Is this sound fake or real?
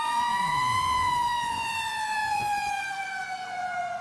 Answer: fake